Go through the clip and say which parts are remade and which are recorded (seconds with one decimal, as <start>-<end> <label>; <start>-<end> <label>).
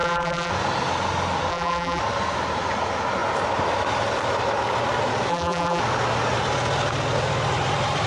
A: 0.0-0.5 remade; 0.5-1.5 recorded; 1.5-2.0 remade; 2.0-5.3 recorded; 5.3-5.8 remade; 5.8-8.1 recorded